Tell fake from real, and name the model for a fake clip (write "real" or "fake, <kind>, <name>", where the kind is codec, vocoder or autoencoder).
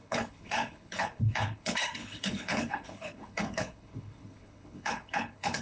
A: fake, codec, HILCodec